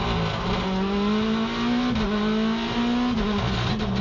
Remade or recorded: recorded